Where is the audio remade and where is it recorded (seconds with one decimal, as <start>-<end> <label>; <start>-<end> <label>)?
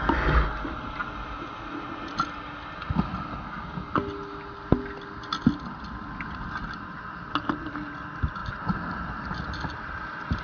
0.0-8.4 recorded; 8.4-10.4 remade